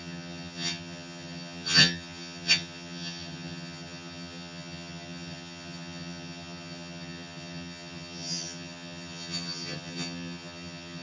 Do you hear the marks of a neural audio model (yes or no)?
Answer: yes